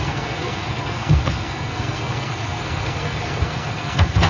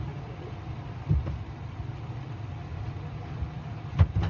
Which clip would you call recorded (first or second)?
second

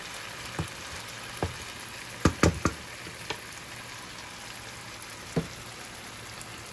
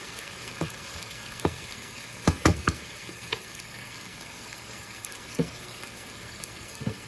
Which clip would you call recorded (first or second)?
first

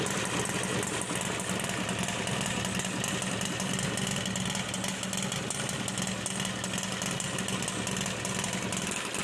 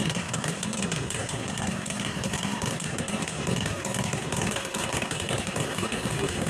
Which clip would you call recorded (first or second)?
first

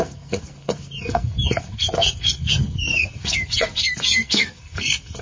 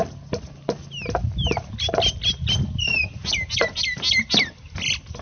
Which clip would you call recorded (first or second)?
second